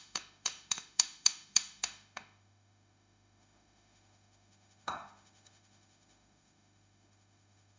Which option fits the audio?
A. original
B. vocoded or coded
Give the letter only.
B